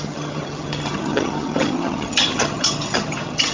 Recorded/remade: remade